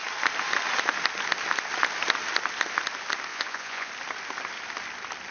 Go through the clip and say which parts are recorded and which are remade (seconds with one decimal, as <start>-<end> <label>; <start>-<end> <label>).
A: 0.0-3.3 recorded; 3.3-3.9 remade; 3.9-5.3 recorded